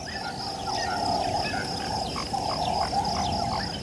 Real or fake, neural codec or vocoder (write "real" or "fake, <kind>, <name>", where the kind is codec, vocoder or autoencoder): real